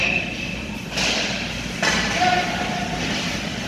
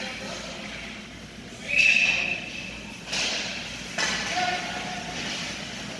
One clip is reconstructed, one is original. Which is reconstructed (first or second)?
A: first